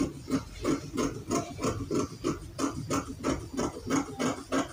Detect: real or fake real